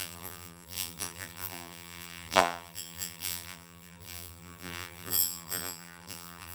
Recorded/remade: remade